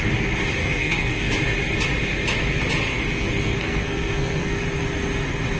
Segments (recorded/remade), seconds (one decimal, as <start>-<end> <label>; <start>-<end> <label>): 0.0-0.6 recorded; 0.6-1.3 remade; 1.3-2.9 recorded; 2.9-4.6 remade; 4.6-5.6 recorded